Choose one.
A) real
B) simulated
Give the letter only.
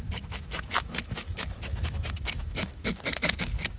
B